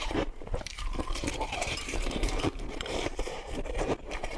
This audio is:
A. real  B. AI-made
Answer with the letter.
B